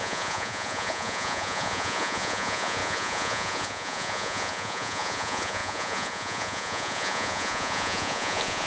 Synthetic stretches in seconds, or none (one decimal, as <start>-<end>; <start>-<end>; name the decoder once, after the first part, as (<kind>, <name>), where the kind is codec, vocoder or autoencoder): 0.0-8.7 (vocoder, Vocos)